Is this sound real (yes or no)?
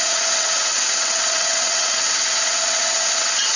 no